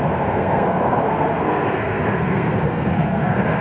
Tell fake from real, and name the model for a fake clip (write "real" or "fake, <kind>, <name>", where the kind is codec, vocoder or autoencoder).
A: fake, codec, SNAC